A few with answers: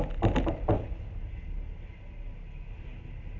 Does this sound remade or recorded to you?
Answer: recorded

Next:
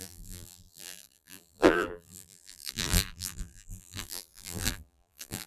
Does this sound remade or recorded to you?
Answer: remade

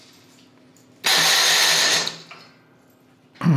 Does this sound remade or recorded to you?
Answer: recorded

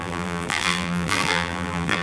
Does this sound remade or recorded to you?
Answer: remade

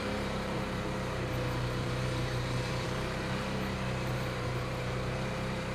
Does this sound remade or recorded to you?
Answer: remade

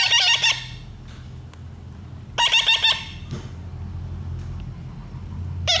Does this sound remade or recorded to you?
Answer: recorded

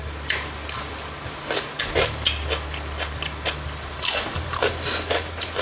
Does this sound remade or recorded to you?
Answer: recorded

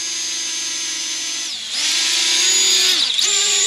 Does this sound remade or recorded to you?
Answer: recorded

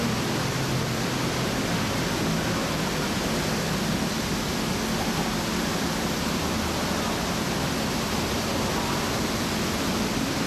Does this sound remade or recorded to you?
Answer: recorded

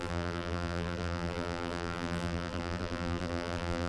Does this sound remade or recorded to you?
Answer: remade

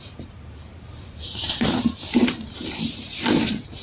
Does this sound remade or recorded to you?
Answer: remade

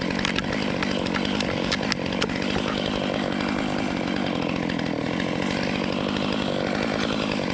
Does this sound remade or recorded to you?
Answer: recorded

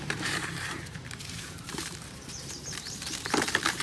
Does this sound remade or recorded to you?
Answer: remade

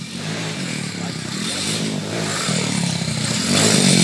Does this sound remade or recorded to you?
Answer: remade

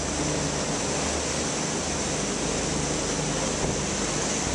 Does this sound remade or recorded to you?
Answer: recorded